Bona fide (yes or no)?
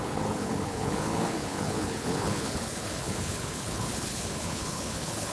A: no